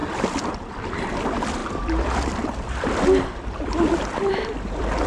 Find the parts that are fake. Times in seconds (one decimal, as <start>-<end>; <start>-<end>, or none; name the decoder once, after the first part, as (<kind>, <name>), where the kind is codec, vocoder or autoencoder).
0.7-5.1 (vocoder, BigVGAN v2)

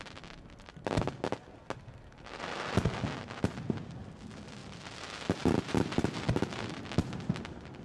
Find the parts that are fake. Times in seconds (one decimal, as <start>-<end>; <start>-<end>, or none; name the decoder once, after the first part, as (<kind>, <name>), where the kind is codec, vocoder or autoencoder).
4.6-7.8 (vocoder, BigVGAN v2)

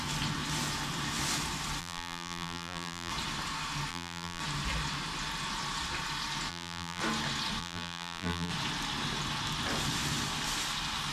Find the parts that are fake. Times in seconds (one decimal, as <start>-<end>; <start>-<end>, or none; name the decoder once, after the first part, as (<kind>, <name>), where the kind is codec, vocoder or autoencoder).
1.8-3.1 (vocoder, BigVGAN v2); 3.9-4.4; 6.5-7.0; 7.6-8.5

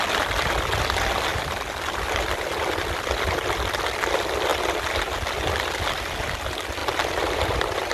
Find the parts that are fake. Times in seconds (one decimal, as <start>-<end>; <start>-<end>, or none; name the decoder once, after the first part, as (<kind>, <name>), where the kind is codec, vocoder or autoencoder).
1.3-4.0 (vocoder, BigVGAN v2); 6.8-7.9

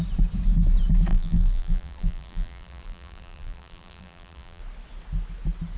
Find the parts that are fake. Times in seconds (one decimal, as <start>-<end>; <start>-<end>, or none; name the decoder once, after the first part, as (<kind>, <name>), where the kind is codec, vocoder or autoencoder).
1.1-4.6 (vocoder, BigVGAN v2)

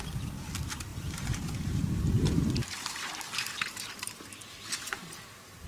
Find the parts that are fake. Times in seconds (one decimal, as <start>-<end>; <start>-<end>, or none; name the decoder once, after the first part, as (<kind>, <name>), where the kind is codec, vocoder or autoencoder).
0.9-4.3 (vocoder, BigVGAN v2)